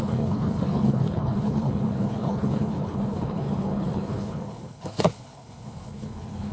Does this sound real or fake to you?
fake